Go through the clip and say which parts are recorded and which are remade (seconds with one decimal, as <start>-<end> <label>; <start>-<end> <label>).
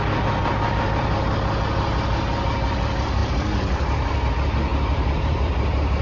0.0-0.4 recorded; 0.4-1.5 remade; 1.5-3.2 recorded; 3.2-4.3 remade; 4.3-4.7 recorded; 4.7-5.5 remade; 5.5-6.0 recorded